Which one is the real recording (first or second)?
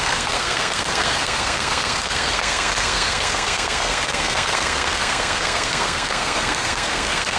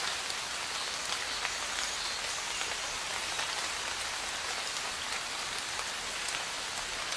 second